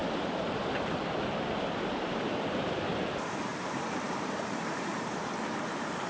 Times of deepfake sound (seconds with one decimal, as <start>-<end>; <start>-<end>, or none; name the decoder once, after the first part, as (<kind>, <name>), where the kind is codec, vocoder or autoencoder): 0.0-6.1 (vocoder, BigVGAN v2)